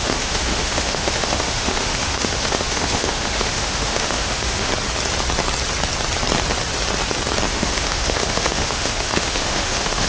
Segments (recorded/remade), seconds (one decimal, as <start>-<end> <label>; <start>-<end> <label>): 0.0-4.7 remade; 4.7-7.5 recorded; 7.5-10.1 remade